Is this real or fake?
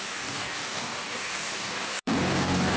fake